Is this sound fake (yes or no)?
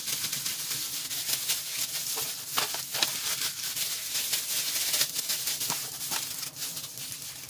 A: no